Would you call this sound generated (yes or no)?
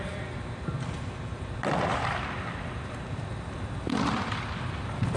yes